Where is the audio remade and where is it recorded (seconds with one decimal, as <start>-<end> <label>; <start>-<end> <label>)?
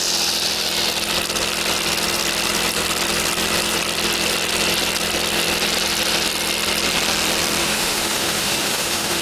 0.0-7.6 recorded; 7.6-9.2 remade